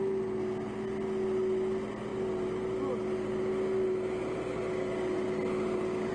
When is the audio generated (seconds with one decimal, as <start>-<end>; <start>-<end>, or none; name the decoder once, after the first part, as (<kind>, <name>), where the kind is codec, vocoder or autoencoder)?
none